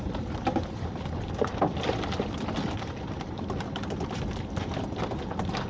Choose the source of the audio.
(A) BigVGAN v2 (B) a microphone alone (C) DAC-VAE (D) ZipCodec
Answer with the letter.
B